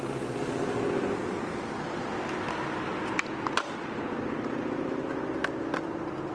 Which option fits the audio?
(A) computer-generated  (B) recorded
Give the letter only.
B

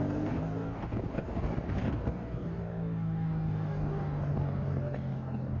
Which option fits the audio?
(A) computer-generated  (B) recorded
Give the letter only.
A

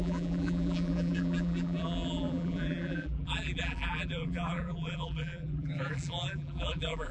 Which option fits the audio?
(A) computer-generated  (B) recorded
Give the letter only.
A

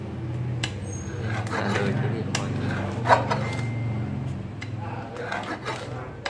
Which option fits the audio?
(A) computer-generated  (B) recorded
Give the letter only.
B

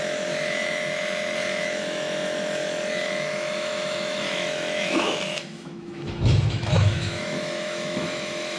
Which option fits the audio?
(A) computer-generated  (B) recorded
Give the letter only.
A